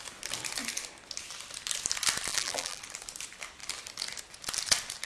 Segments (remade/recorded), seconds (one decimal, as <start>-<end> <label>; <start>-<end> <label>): 0.0-2.3 recorded; 2.3-2.8 remade; 2.8-5.1 recorded